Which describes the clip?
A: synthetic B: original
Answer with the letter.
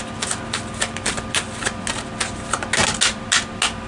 B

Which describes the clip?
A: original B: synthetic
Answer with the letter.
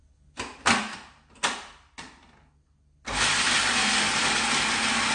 A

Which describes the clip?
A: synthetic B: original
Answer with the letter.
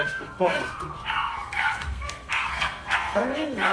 A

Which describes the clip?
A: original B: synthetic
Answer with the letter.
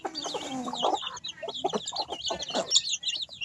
A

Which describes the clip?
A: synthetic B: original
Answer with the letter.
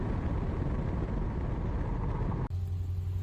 B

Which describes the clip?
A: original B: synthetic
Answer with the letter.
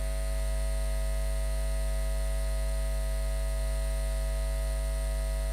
A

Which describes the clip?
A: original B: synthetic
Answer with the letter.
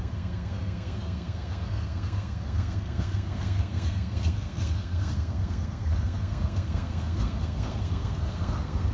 B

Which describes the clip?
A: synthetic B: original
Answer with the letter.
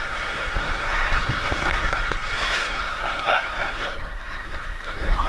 A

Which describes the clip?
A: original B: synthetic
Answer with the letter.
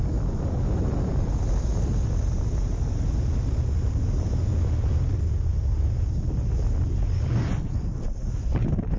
A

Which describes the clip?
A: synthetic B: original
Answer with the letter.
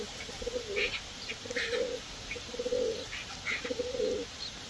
B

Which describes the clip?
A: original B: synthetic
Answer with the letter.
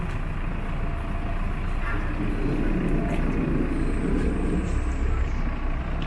A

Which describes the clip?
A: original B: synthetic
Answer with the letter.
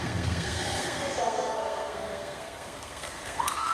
B